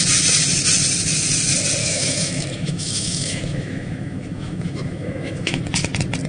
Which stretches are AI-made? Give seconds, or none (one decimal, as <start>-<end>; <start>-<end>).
1.8-5.6